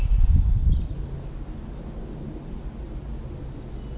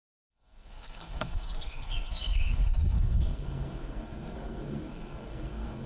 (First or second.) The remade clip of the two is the second